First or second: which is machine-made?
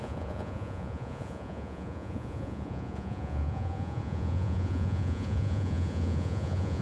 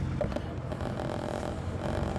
first